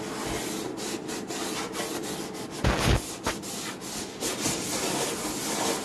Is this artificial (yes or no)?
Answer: no